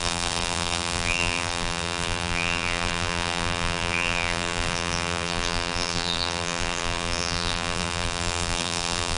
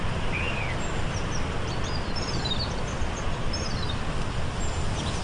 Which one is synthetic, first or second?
first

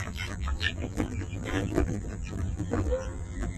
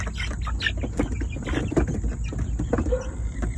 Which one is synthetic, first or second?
first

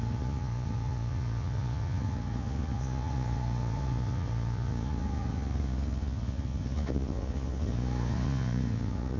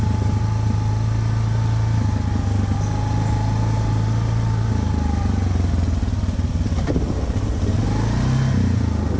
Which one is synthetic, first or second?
first